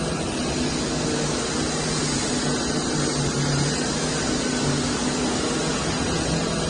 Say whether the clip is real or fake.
real